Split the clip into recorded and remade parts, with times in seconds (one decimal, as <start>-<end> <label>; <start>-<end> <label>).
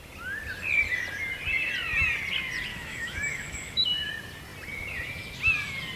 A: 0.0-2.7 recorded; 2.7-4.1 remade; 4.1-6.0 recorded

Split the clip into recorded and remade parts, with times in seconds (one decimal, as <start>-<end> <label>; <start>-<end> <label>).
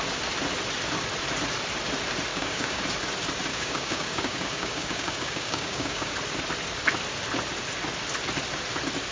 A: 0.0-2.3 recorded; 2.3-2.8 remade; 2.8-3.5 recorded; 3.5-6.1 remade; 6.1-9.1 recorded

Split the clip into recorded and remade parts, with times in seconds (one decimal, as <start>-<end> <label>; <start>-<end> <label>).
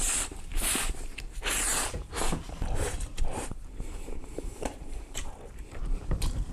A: 0.0-6.5 remade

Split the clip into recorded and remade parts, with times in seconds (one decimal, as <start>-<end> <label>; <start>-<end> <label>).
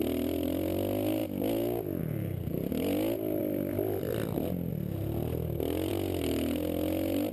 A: 0.0-7.3 recorded